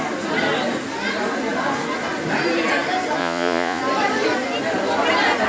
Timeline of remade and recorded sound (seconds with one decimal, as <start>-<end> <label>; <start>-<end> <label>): 0.0-3.2 recorded; 3.2-3.8 remade; 3.8-5.5 recorded